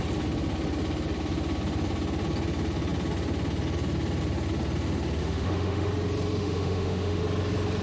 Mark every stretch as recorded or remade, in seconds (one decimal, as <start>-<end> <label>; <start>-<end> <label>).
0.0-5.2 recorded; 5.2-5.9 remade; 5.9-6.4 recorded; 6.4-7.2 remade; 7.2-7.8 recorded

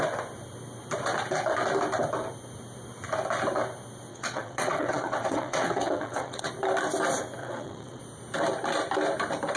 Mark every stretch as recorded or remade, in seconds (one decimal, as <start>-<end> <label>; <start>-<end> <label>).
0.0-4.1 recorded; 4.1-6.5 remade; 6.5-7.4 recorded; 7.4-8.0 remade; 8.0-9.6 recorded

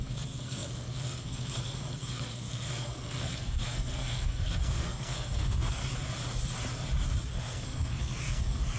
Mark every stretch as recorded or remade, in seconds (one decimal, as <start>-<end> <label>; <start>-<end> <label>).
0.0-5.8 remade; 5.8-7.3 recorded; 7.3-8.8 remade

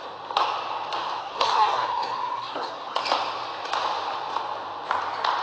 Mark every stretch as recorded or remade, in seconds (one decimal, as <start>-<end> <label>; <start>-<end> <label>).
0.0-1.2 recorded; 1.2-3.0 remade; 3.0-5.4 recorded

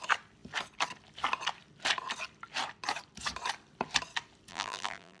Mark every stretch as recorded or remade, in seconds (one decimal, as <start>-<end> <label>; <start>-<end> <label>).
0.0-4.5 recorded; 4.5-5.2 remade

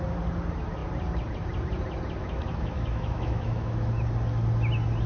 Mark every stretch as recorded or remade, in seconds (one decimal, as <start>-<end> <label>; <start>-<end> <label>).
0.0-2.2 recorded; 2.2-3.9 remade; 3.9-5.1 recorded

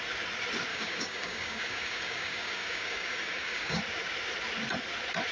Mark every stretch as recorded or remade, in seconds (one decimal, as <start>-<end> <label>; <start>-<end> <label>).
0.0-0.7 recorded; 0.7-3.8 remade; 3.8-5.3 recorded